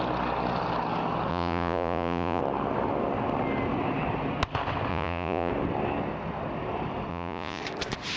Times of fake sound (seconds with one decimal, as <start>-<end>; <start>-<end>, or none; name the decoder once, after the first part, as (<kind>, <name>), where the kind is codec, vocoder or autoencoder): 1.3-2.4 (vocoder, Vocos); 4.9-5.5; 7.1-7.6